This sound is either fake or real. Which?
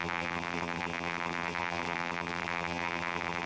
fake